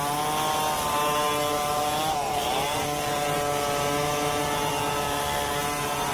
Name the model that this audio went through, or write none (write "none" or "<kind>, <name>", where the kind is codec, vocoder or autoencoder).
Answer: none